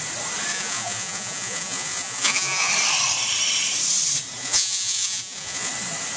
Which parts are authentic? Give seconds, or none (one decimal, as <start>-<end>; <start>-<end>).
0.0-0.5; 2.7-4.4; 5.7-6.2